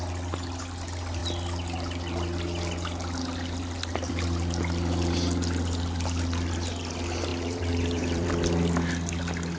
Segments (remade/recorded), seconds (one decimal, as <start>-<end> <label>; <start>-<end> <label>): 0.0-7.3 recorded; 7.3-8.3 remade; 8.3-9.6 recorded